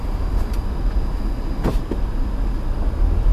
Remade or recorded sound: recorded